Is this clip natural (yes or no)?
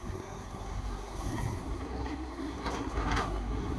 no